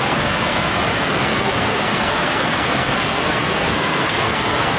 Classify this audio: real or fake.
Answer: fake